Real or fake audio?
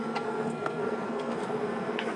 fake